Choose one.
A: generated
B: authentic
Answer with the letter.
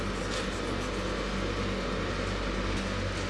B